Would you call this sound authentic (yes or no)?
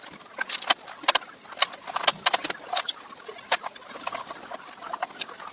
yes